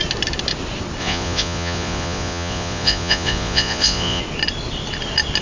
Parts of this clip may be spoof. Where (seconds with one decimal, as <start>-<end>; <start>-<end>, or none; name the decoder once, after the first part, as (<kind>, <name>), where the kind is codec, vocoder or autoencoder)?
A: 1.0-4.2 (vocoder, Vocos)